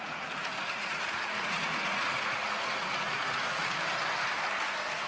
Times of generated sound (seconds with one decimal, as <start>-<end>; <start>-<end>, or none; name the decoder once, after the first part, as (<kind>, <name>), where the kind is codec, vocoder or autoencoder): 0.0-3.6 (vocoder, Vocos)